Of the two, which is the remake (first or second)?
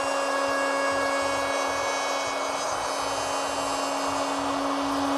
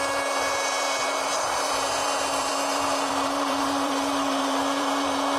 second